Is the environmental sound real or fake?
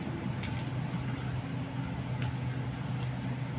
real